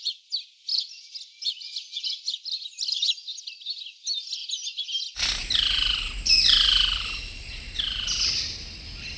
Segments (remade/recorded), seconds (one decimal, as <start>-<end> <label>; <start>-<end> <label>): 0.0-9.2 recorded